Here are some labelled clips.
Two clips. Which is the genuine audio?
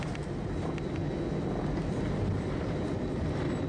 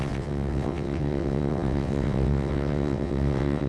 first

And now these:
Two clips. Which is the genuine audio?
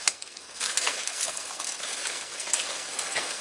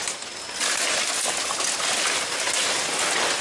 second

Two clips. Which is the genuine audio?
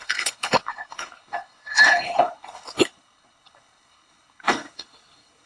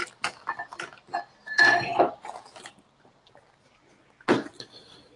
second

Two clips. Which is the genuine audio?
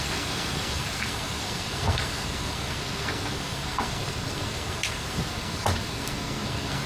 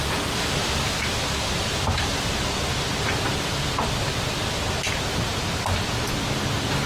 second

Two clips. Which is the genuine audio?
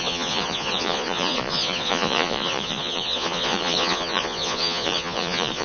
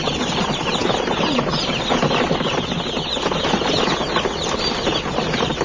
second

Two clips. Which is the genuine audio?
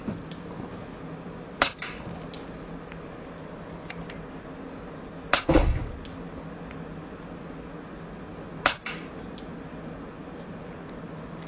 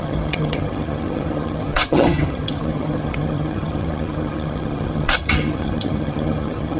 first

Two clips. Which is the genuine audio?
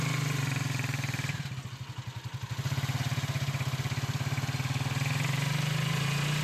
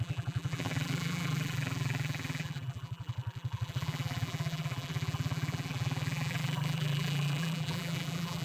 first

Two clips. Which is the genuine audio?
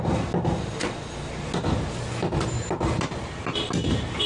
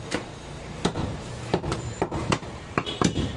first